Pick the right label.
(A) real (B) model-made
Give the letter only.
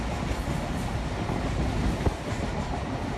A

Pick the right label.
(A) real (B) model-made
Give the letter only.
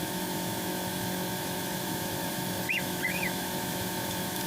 B